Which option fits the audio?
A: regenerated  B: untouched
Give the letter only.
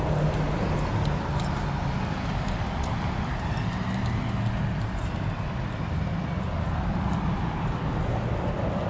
B